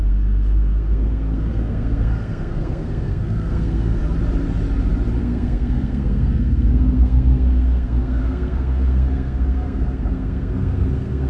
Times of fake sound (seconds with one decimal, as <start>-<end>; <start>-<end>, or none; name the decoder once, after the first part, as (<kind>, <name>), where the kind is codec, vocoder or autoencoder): 0.0-4.0 (codec, SNAC); 5.2-11.3